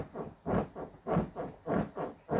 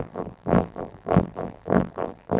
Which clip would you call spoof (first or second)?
second